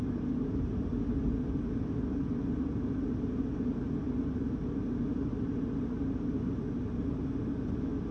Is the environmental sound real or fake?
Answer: real